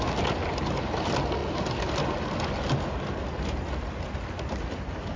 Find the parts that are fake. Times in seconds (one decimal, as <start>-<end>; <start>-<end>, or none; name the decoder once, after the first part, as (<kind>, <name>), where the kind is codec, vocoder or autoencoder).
1.4-1.9 (vocoder, BigVGAN v2)